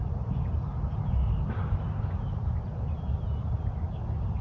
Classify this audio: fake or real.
real